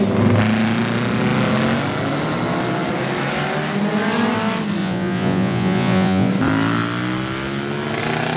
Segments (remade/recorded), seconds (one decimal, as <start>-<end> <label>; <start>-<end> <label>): 0.0-4.8 recorded; 4.8-6.3 remade; 6.3-8.4 recorded